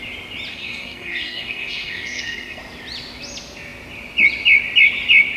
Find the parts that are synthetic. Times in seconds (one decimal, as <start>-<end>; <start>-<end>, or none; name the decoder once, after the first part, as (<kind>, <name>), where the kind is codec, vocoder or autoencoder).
0.5-2.6 (codec, SNAC)